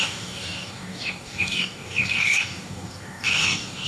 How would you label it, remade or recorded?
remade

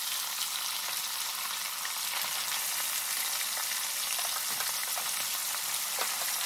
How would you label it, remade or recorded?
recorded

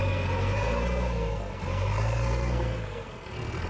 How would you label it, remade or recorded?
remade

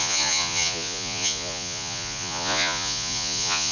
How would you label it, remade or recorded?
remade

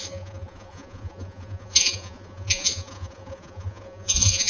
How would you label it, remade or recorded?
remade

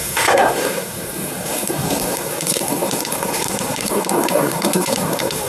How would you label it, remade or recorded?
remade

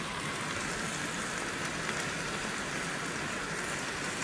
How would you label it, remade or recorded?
recorded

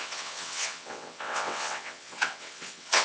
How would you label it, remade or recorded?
remade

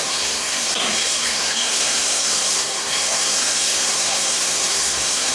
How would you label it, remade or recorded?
remade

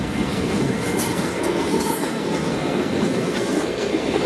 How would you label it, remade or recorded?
remade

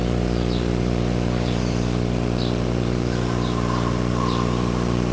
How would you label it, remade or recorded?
remade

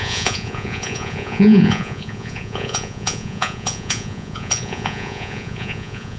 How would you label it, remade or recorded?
remade